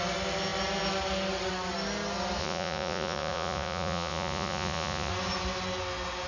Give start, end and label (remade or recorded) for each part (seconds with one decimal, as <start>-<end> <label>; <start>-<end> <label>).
0.0-2.4 recorded; 2.4-5.1 remade; 5.1-6.3 recorded